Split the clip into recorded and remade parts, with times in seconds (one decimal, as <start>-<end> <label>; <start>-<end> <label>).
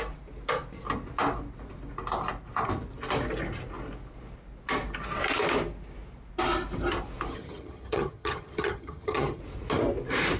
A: 0.0-7.3 recorded; 7.3-9.4 remade; 9.4-10.4 recorded